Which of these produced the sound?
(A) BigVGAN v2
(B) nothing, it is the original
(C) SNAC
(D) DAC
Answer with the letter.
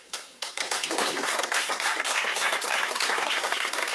C